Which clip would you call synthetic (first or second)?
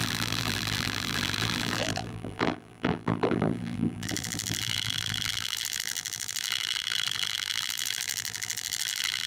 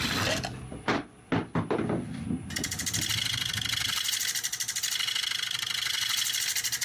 first